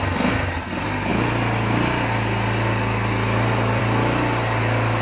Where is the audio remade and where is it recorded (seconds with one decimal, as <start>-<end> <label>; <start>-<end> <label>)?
0.0-5.0 recorded